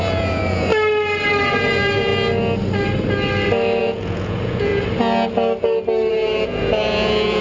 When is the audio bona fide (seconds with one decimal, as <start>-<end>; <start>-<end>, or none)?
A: 0.7-1.4; 2.1-3.8; 4.7-6.1